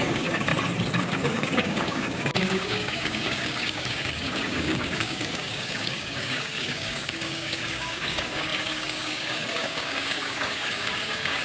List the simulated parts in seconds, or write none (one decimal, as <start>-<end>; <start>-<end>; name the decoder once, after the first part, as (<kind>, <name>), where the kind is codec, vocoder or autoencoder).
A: 0.0-0.5 (codec, DAC); 1.0-11.4